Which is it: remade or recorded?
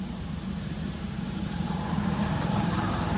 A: remade